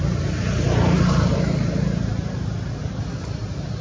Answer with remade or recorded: remade